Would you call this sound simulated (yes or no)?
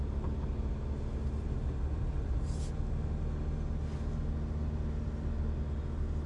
no